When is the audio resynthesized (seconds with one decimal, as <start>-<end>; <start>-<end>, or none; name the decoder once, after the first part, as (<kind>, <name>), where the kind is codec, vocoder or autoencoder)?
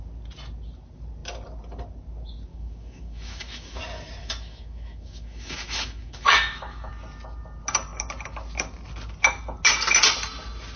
2.5-3.8 (autoencoder, DAC-VAE); 4.2-6.9